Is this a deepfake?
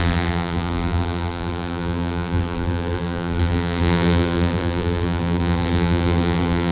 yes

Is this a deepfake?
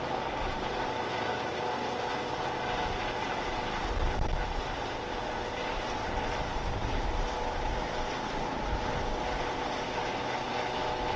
no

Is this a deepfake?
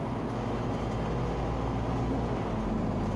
no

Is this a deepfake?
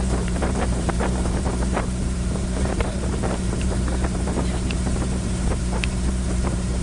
yes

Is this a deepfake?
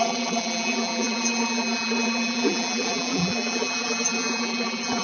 yes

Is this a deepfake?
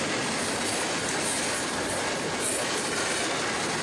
yes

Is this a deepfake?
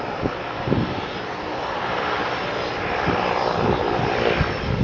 no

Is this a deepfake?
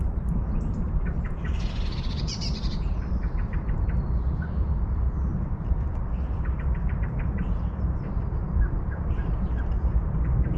yes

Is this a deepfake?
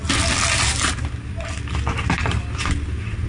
no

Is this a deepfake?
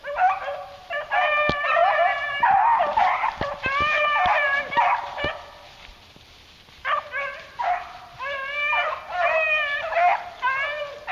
no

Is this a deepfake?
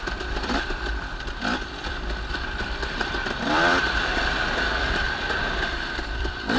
yes